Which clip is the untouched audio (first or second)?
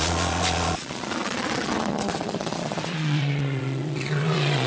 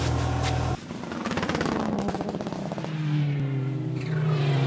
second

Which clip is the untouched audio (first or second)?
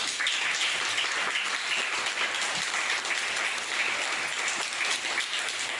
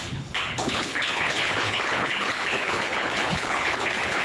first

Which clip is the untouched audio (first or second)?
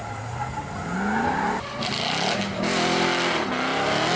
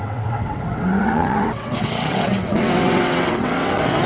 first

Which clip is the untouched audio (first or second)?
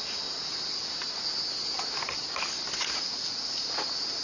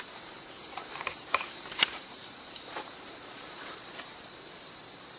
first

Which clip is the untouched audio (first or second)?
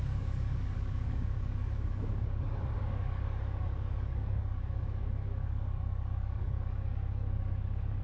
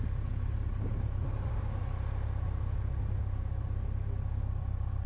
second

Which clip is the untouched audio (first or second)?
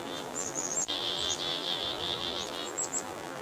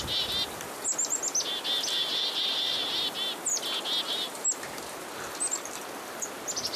second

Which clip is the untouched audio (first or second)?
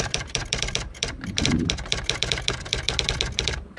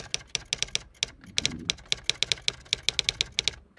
second